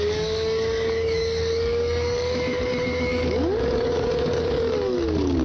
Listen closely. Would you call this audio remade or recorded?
remade